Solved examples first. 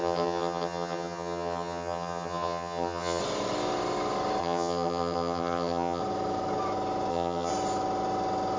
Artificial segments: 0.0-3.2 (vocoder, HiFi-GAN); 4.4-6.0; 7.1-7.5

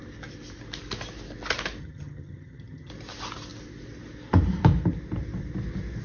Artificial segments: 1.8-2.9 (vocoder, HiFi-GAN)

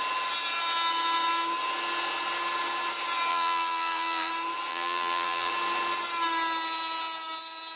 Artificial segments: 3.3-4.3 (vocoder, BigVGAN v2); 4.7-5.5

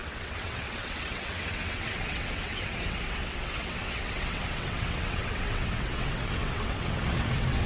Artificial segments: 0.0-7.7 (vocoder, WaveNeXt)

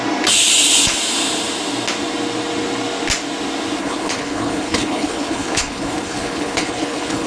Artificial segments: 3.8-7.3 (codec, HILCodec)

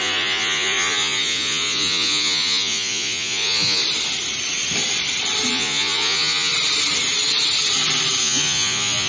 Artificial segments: 0.0-3.8 (vocoder, Vocos); 5.5-6.5; 8.2-9.1

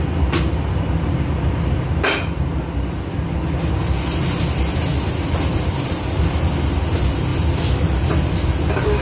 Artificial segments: none